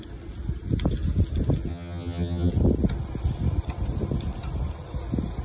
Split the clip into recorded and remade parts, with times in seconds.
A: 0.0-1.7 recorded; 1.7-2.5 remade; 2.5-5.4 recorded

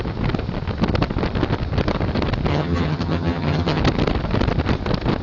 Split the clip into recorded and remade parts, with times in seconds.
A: 0.0-2.5 recorded; 2.5-3.8 remade; 3.8-5.2 recorded

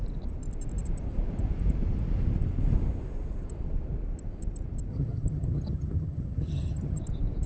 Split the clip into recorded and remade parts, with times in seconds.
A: 0.0-4.9 recorded; 4.9-7.0 remade; 7.0-7.5 recorded

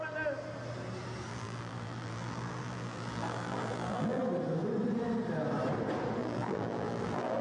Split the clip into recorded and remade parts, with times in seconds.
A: 0.0-1.3 recorded; 1.3-4.2 remade; 4.2-6.2 recorded; 6.2-7.4 remade

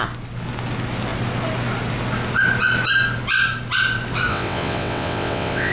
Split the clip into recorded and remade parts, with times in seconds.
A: 0.0-4.3 recorded; 4.3-5.7 remade

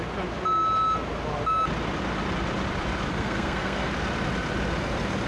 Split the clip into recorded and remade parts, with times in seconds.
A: 0.0-3.1 recorded; 3.1-3.9 remade; 3.9-5.3 recorded

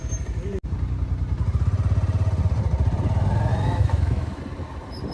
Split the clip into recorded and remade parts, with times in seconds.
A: 0.0-3.5 recorded; 3.5-4.4 remade; 4.4-5.1 recorded

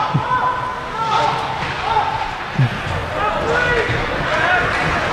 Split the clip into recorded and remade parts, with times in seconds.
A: 0.0-0.7 recorded; 0.7-2.0 remade; 2.0-5.1 recorded